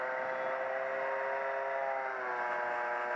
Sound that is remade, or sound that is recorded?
recorded